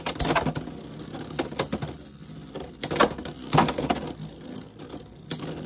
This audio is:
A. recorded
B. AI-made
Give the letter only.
A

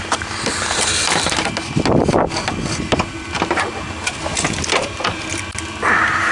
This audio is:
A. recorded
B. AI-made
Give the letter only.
A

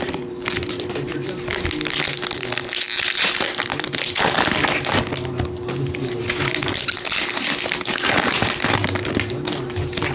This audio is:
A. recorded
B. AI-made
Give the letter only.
A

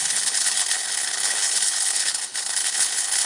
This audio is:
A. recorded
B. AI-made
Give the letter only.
B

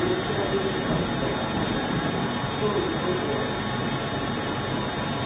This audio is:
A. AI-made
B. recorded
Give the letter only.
B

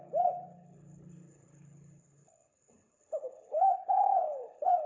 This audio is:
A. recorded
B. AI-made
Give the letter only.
B